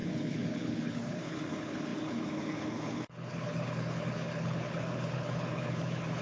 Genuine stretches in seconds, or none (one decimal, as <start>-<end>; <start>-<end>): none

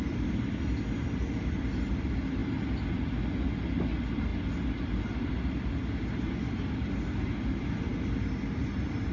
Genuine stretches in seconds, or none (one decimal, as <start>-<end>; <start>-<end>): 0.0-9.1

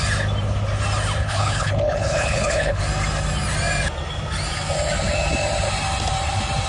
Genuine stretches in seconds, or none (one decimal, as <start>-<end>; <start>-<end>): 0.0-1.2; 2.8-6.7